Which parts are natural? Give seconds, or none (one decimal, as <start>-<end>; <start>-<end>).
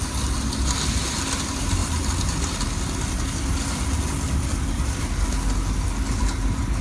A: 0.0-6.8